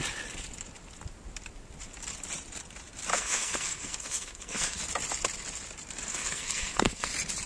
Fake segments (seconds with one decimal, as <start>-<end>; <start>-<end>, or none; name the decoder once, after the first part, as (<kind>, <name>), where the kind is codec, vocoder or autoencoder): 3.1-4.8 (codec, SNAC); 6.1-7.1